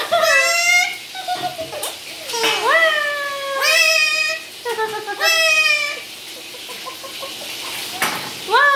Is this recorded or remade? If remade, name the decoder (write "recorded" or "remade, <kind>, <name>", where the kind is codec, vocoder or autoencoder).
recorded